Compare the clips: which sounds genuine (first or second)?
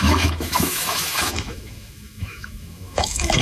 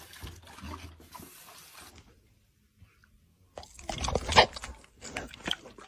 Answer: second